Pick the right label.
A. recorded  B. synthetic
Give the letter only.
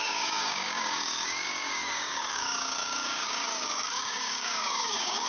B